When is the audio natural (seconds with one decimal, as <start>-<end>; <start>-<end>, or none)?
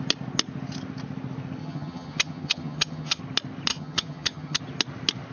0.0-1.6; 3.2-3.7; 4.6-5.3